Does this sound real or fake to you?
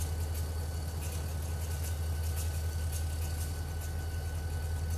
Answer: real